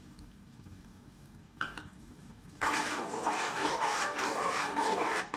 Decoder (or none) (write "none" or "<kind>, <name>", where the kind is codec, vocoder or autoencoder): codec, DAC